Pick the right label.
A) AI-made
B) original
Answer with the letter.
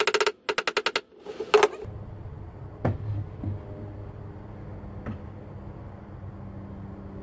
B